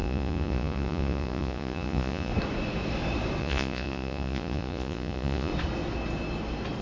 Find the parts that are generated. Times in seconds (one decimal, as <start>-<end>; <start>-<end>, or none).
0.0-2.3; 3.4-5.5